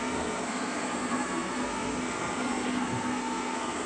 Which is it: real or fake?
fake